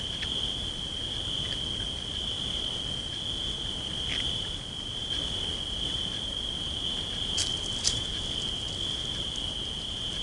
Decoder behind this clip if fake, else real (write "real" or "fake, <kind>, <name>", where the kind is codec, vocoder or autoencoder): real